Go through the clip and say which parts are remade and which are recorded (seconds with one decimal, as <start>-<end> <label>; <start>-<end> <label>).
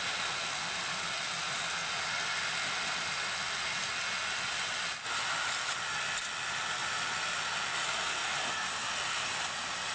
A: 0.0-8.2 recorded; 8.2-8.9 remade; 8.9-9.9 recorded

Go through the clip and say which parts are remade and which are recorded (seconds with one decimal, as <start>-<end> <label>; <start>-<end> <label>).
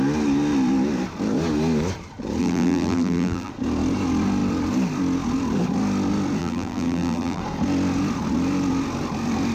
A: 0.0-2.4 recorded; 2.4-3.5 remade; 3.5-6.4 recorded; 6.4-7.4 remade; 7.4-9.5 recorded